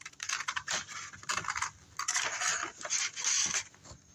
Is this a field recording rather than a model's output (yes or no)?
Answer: yes